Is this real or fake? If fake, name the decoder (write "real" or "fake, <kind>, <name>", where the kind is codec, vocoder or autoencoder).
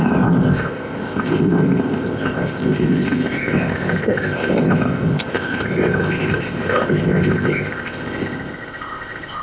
fake, codec, ZipCodec